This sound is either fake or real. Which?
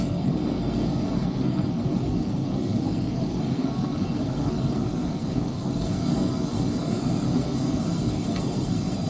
fake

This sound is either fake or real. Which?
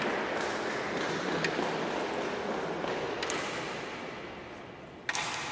real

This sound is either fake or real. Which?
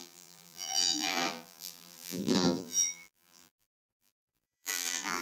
fake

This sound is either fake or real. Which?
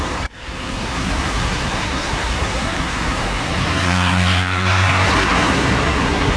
fake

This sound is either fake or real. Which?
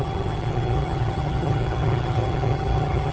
fake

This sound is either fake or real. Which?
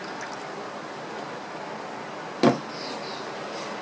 real